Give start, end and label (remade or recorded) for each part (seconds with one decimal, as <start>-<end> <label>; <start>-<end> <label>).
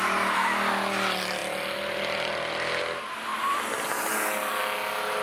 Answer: 0.0-5.2 recorded